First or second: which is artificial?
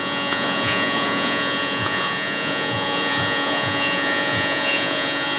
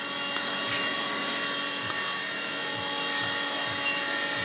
first